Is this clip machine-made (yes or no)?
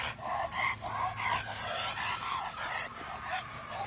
no